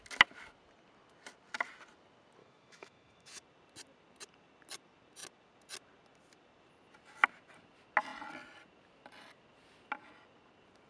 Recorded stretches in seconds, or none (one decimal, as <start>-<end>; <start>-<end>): 0.0-2.4; 3.4-10.9